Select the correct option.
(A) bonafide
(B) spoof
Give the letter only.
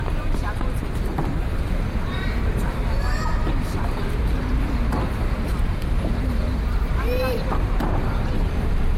B